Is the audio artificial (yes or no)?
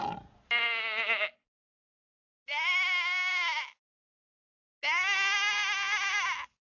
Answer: no